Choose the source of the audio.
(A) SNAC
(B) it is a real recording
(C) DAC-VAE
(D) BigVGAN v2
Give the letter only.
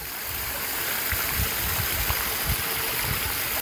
D